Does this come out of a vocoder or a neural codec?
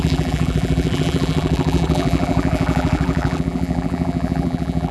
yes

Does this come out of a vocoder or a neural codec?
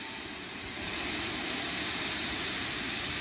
yes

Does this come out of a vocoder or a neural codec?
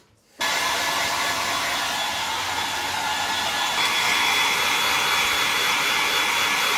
no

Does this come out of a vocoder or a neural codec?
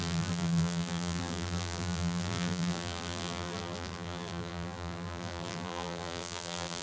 yes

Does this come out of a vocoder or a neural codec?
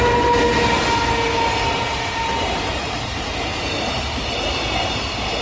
no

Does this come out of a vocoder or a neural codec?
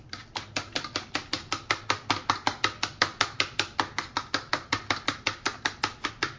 no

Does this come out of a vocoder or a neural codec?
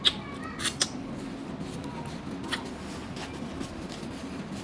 no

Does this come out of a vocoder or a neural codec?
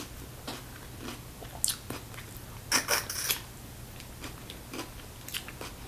no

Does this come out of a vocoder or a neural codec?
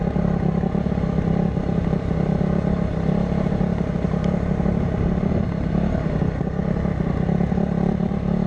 yes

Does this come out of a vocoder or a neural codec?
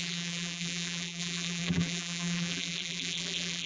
yes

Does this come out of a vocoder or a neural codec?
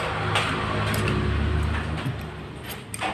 no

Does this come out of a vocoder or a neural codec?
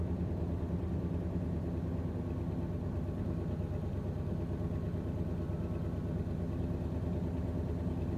no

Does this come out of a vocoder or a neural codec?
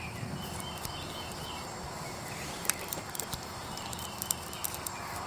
yes